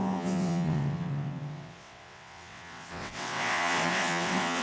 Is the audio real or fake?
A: fake